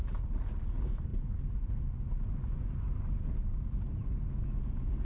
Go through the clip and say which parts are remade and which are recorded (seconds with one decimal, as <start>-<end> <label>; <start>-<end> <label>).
0.0-5.0 recorded